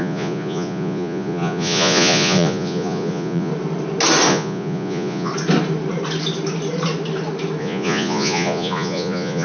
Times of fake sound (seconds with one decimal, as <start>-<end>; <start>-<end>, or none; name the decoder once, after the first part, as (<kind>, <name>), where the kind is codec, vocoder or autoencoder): 0.0-3.5 (vocoder, Vocos); 4.3-5.3; 7.6-9.4